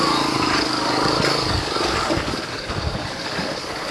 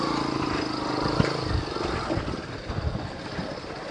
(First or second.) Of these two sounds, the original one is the second